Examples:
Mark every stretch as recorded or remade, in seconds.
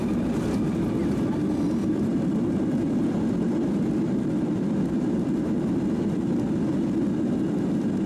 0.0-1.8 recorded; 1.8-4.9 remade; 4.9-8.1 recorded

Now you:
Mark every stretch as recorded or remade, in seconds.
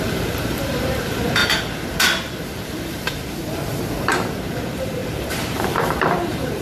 0.0-1.4 remade; 1.4-2.4 recorded; 2.4-6.6 remade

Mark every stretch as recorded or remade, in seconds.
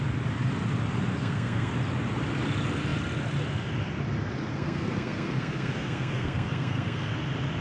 0.0-1.2 recorded; 1.2-1.7 remade; 1.7-4.5 recorded; 4.5-7.1 remade; 7.1-7.6 recorded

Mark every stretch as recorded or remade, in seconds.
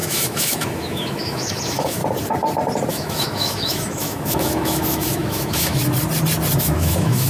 0.0-2.0 remade; 2.0-2.9 recorded; 2.9-5.8 remade; 5.8-6.6 recorded; 6.6-7.3 remade